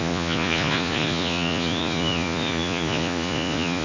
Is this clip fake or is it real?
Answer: fake